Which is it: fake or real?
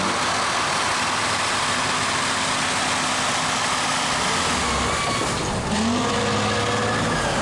real